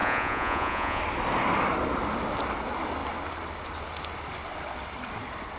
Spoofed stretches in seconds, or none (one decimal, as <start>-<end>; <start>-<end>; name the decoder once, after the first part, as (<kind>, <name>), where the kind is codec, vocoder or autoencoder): 0.0-1.0 (vocoder, Vocos)